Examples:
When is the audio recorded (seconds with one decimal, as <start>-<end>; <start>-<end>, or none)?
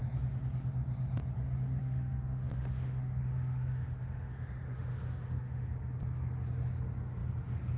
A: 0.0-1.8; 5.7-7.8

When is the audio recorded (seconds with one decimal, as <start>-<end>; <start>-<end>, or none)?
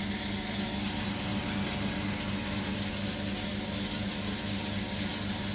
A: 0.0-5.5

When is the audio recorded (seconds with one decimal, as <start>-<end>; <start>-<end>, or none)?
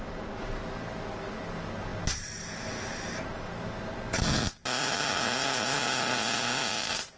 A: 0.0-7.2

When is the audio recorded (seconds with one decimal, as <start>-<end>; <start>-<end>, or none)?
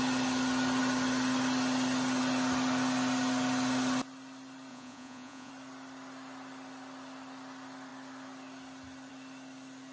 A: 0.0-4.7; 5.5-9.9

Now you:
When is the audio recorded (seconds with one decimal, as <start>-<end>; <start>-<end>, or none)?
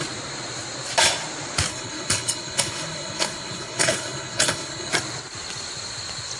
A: 0.0-1.7; 4.9-6.4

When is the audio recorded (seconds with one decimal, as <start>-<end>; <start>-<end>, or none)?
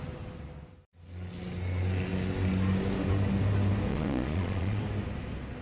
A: 0.0-3.9; 4.8-5.6